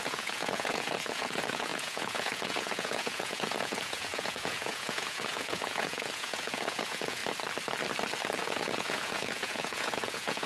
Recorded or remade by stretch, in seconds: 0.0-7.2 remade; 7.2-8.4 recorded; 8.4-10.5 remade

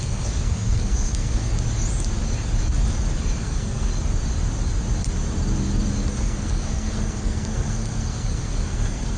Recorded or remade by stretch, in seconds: 0.0-1.5 remade; 1.5-3.4 recorded; 3.4-3.9 remade; 3.9-6.1 recorded; 6.1-9.2 remade

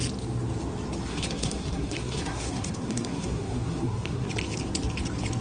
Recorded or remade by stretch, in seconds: 0.0-1.1 recorded; 1.1-4.3 remade; 4.3-5.4 recorded

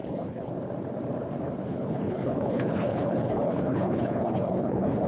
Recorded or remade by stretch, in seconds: 0.0-0.5 remade; 0.5-1.6 recorded; 1.6-5.1 remade

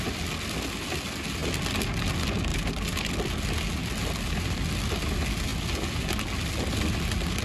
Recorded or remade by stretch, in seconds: 0.0-2.5 recorded; 2.5-3.1 remade; 3.1-7.4 recorded

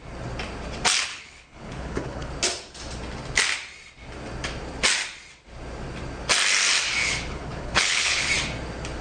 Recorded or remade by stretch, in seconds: 0.0-1.1 recorded; 1.1-2.3 remade; 2.3-7.0 recorded; 7.0-8.3 remade; 8.3-9.0 recorded

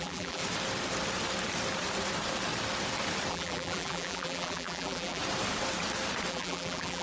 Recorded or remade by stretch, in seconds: 0.0-0.4 remade; 0.4-3.3 recorded; 3.3-5.2 remade; 5.2-6.3 recorded; 6.3-7.0 remade

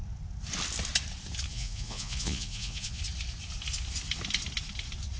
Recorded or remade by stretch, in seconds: 0.0-1.5 recorded; 1.5-3.0 remade; 3.0-5.2 recorded